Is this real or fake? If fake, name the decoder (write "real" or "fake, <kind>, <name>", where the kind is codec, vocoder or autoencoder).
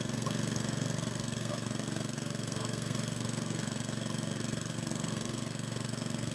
fake, codec, SNAC